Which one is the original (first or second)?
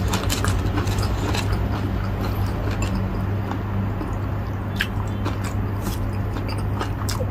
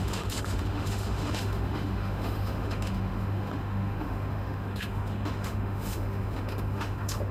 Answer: first